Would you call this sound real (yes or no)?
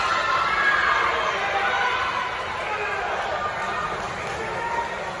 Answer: yes